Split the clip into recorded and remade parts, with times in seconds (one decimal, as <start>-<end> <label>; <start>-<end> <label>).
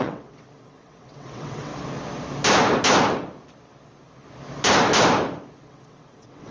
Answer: 0.0-1.7 remade; 1.7-5.6 recorded; 5.6-6.5 remade